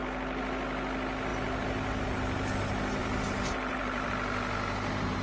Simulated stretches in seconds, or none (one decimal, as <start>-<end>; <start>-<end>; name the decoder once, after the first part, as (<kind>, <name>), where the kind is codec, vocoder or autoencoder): 3.0-4.1 (vocoder, BigVGAN v2)